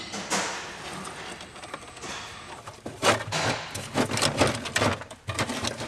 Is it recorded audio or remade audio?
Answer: recorded